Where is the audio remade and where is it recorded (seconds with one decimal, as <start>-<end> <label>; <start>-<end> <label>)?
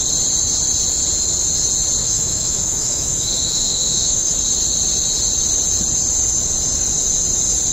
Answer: 0.0-2.0 recorded; 2.0-4.3 remade; 4.3-7.7 recorded